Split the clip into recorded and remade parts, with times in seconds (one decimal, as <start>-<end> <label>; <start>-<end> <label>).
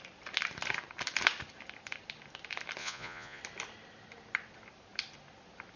0.0-2.8 recorded; 2.8-3.4 remade; 3.4-5.8 recorded